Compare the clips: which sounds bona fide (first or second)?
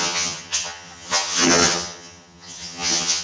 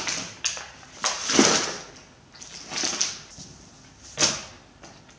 second